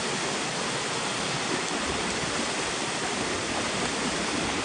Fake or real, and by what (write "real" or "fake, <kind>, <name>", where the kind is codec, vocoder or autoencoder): real